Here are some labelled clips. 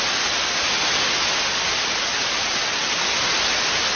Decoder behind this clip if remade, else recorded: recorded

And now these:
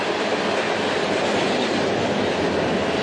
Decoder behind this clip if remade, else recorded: recorded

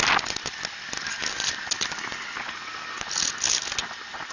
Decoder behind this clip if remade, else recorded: recorded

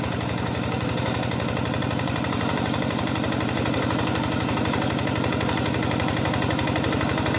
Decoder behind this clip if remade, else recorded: remade, vocoder, BigVGAN v2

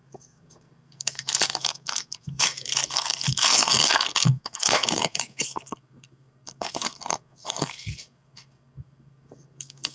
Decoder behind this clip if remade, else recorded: remade, codec, SNAC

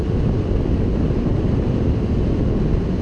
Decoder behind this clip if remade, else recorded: recorded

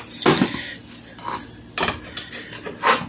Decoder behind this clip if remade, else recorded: recorded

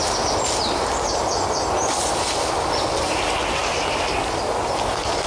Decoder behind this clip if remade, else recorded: recorded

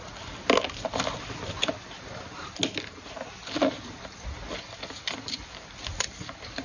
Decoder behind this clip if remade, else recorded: recorded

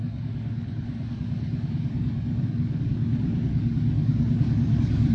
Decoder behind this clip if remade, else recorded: remade, codec, DAC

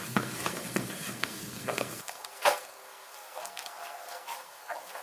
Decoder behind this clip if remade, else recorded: remade, codec, SNAC